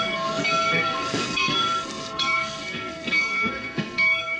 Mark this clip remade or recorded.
remade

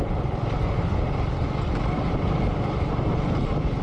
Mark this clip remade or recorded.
remade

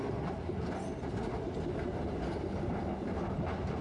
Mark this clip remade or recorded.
recorded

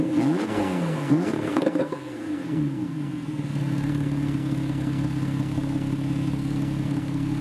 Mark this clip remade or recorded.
remade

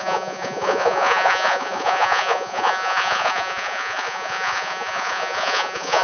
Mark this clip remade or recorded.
remade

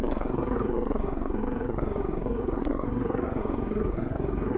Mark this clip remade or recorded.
remade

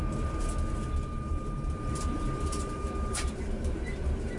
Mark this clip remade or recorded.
remade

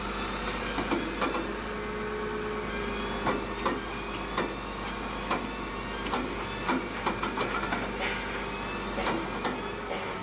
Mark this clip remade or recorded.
recorded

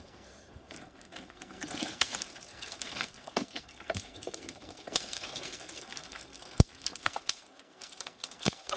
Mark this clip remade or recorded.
remade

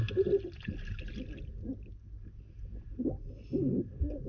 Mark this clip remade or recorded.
recorded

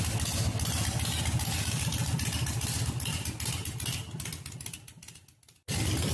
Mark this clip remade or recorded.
recorded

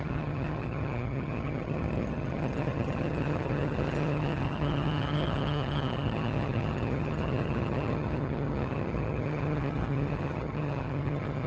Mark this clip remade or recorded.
remade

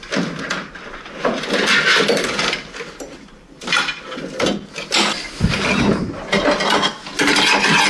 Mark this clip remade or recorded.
recorded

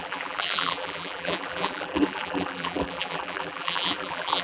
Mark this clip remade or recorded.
remade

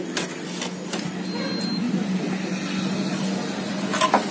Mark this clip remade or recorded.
recorded